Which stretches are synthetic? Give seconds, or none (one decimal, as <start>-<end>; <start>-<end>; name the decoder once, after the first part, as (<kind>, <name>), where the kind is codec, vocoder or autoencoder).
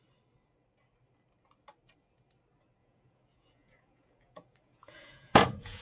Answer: 2.8-5.8 (vocoder, Vocos)